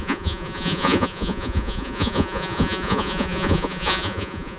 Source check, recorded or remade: remade